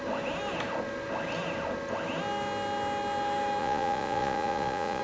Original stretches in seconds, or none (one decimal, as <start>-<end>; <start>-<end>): 0.0-3.6